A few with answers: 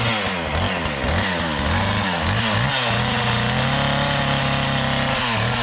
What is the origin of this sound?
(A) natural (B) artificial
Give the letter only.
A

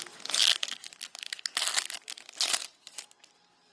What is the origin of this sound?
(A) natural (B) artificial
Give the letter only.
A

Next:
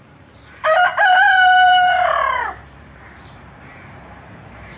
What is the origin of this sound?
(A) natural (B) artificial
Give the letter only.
B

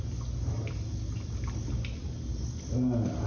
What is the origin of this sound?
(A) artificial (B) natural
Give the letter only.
B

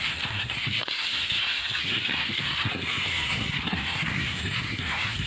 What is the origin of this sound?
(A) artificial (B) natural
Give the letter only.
A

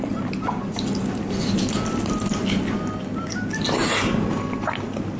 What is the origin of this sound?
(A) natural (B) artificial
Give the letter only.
A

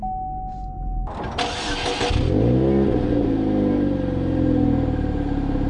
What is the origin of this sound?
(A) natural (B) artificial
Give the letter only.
A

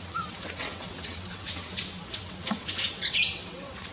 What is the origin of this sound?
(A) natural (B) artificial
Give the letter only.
B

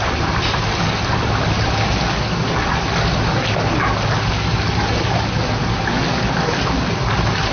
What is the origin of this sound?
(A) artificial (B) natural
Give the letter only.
B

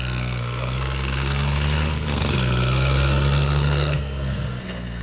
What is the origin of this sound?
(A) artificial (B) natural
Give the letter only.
A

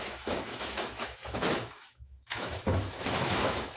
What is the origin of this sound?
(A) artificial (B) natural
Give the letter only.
A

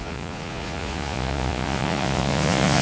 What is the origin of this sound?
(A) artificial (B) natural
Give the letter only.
A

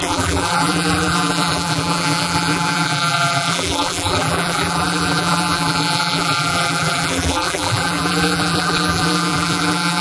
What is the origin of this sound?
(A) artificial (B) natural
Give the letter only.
A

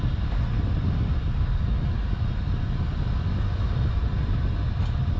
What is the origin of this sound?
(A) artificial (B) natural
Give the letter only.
B